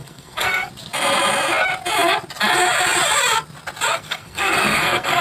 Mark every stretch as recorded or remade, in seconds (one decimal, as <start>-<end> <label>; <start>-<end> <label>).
0.0-0.7 remade; 0.7-3.9 recorded; 3.9-5.2 remade